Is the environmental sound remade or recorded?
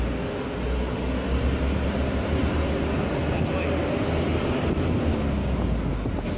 recorded